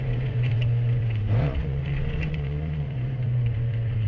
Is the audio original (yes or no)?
no